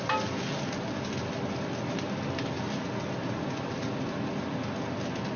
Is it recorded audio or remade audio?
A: recorded